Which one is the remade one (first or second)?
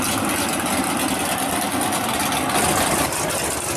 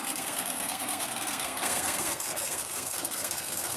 second